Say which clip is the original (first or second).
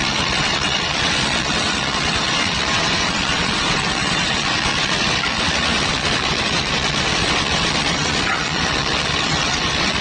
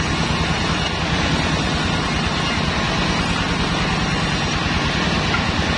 second